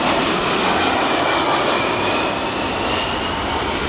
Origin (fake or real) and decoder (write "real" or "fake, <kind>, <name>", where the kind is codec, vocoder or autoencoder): real